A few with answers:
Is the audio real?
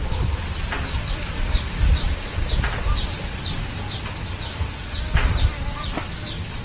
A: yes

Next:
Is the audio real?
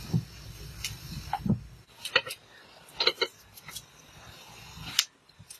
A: yes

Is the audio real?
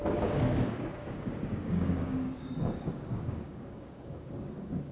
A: no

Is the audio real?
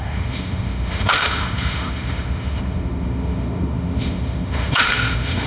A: no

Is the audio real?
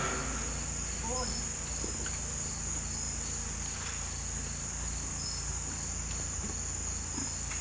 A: yes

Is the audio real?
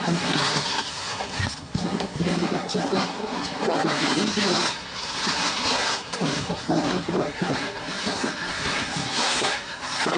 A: no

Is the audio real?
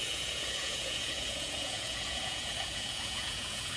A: no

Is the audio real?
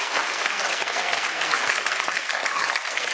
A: no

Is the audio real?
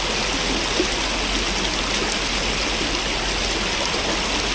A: yes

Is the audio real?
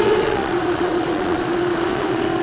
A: no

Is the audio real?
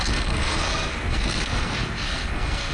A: no